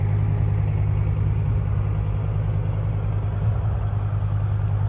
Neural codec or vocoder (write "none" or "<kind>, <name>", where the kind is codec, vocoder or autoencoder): none